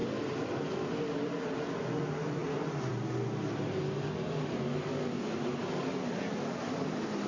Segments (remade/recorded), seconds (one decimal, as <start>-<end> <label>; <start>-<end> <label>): 0.0-7.3 recorded